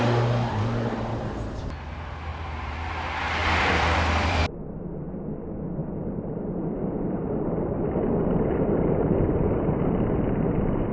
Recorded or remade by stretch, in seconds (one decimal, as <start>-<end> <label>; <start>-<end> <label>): 0.0-2.3 recorded; 2.3-2.9 remade; 2.9-3.4 recorded; 3.4-4.4 remade; 4.4-5.8 recorded; 5.8-10.9 remade

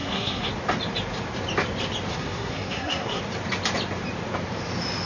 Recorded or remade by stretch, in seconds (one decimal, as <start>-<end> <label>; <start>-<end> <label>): 0.0-0.5 remade; 0.5-2.1 recorded; 2.1-3.2 remade; 3.2-5.1 recorded

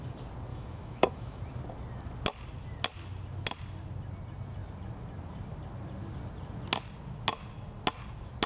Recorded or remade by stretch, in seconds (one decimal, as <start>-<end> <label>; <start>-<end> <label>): 0.0-0.5 recorded; 0.5-1.4 remade; 1.4-8.5 recorded

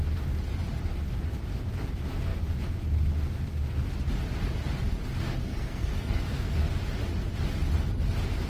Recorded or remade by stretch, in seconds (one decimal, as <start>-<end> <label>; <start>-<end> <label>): 0.0-5.4 recorded; 5.4-6.7 remade; 6.7-8.5 recorded

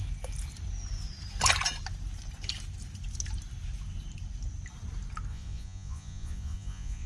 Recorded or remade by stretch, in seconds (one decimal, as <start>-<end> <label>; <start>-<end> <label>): 0.0-5.3 recorded; 5.3-7.1 remade